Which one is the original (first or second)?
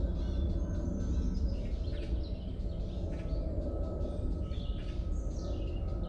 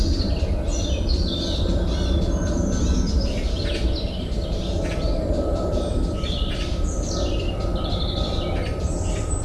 first